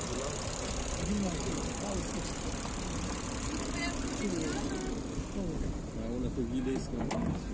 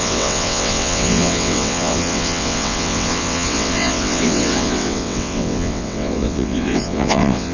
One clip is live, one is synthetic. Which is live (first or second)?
first